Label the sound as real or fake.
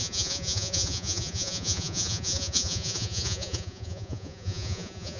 fake